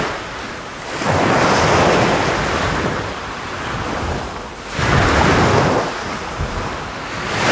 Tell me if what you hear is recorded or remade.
recorded